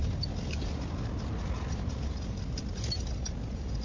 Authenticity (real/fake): real